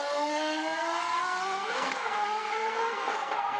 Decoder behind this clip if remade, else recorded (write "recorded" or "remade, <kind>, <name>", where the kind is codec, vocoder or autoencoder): remade, codec, SNAC